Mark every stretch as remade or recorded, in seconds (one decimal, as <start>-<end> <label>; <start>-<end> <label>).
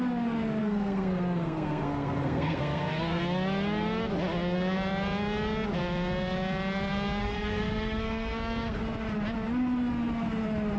0.0-0.6 recorded; 0.6-3.2 remade; 3.2-7.2 recorded; 7.2-8.8 remade; 8.8-10.8 recorded